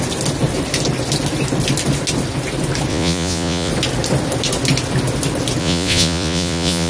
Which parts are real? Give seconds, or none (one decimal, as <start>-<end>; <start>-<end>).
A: 0.0-2.9; 3.7-5.6